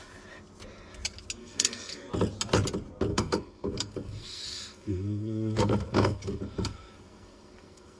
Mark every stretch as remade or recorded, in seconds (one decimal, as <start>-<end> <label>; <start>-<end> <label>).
0.0-1.4 recorded; 1.4-2.1 remade; 2.1-3.1 recorded; 3.1-8.0 remade